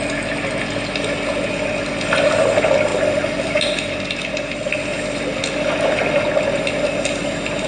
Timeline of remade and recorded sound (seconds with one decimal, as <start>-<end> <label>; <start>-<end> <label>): 0.0-7.7 recorded